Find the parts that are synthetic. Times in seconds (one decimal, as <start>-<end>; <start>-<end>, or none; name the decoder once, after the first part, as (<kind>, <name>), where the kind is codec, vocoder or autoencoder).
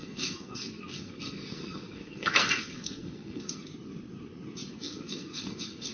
0.0-3.7 (codec, SNAC); 4.7-5.9